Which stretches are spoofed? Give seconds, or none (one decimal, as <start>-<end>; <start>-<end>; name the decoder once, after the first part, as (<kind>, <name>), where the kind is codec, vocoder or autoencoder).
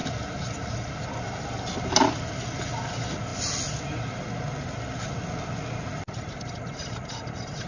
none